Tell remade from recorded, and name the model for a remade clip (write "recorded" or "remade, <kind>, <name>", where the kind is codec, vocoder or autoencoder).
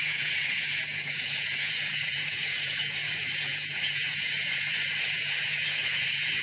remade, vocoder, Vocos